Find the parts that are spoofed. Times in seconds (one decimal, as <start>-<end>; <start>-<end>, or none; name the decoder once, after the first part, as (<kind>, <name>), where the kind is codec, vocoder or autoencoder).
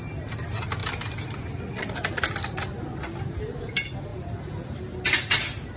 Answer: 4.1-4.8 (vocoder, BigVGAN v2)